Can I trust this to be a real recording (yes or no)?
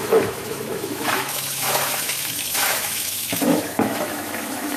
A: no